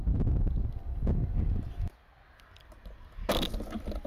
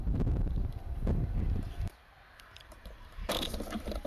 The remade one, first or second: second